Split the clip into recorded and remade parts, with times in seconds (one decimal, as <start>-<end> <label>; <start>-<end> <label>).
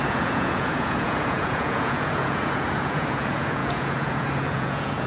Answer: 0.0-5.1 remade